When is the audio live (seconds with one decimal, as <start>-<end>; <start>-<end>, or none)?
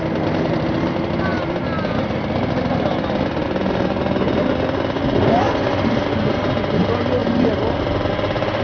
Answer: 0.0-8.6